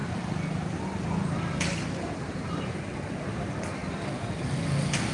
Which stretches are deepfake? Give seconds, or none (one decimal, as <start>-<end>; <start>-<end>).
none